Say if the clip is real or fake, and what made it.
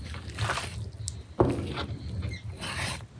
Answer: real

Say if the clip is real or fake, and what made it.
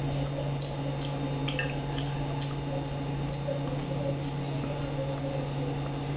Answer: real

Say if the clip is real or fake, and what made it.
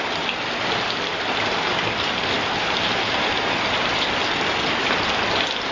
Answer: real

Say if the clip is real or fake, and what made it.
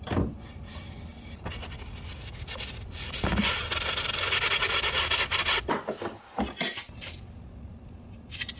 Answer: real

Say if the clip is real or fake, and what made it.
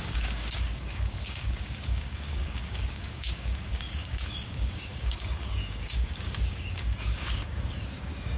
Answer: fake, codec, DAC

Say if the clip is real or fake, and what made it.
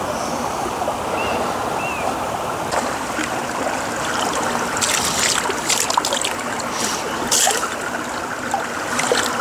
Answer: real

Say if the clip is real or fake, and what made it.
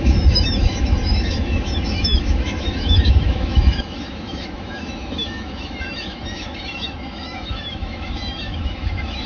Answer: fake, autoencoder, DAC-VAE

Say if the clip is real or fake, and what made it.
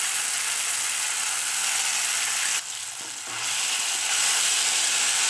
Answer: real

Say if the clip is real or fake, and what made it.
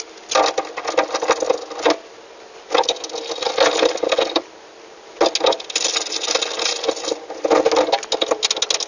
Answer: real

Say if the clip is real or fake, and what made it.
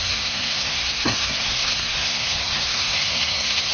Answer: fake, codec, SNAC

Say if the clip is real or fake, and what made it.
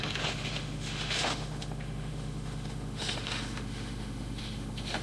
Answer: fake, autoencoder, DAC-VAE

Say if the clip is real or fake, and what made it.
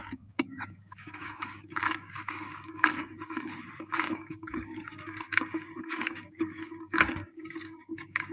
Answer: fake, codec, DAC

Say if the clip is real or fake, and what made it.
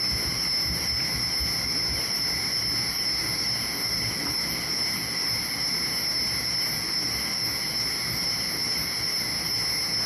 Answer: real